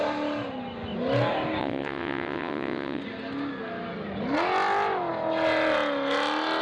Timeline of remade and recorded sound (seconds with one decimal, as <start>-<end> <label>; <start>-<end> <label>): 0.0-1.6 recorded; 1.6-3.0 remade; 3.0-6.6 recorded